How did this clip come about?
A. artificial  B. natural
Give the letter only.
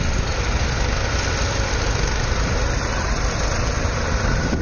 B